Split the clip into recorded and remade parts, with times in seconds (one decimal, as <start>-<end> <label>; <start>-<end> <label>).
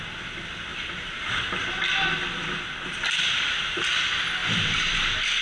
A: 0.0-0.7 recorded; 0.7-1.3 remade; 1.3-4.4 recorded; 4.4-5.0 remade; 5.0-5.4 recorded